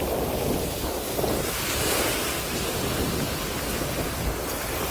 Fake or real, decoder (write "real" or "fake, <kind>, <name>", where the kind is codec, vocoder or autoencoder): real